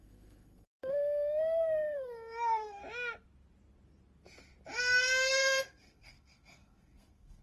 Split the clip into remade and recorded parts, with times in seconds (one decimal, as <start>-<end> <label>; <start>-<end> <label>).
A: 0.0-2.8 remade; 2.8-4.8 recorded; 4.8-7.4 remade